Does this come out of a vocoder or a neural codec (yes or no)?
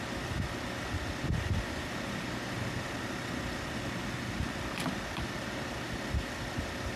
no